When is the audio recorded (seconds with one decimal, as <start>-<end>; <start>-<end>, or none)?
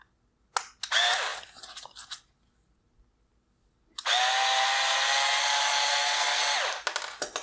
0.0-5.9; 6.4-7.4